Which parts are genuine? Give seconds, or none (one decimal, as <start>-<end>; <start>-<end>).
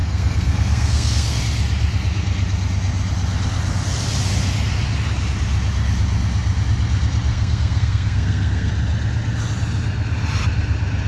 1.4-7.3; 8.7-11.1